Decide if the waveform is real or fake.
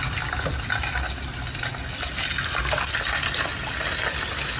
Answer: real